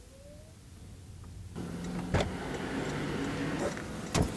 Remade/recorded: recorded